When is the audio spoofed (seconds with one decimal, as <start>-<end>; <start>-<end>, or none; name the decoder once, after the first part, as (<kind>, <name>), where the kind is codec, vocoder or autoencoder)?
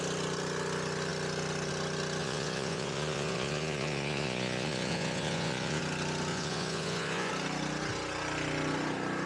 2.2-5.8 (vocoder, Vocos); 6.3-7.3